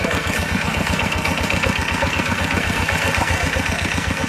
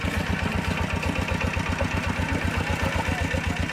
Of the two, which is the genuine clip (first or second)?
second